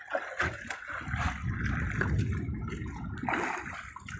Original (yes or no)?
yes